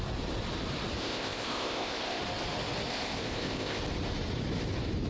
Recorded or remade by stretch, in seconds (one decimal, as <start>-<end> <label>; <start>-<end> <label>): 0.0-1.0 recorded; 1.0-2.2 remade; 2.2-2.9 recorded; 2.9-3.8 remade; 3.8-5.1 recorded